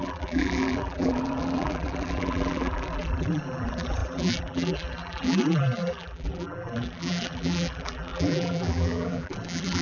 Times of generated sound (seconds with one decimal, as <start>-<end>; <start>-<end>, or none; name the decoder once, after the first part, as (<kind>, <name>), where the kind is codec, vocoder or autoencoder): 0.0-9.8 (vocoder, BigVGAN v2)